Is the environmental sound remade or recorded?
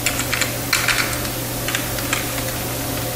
recorded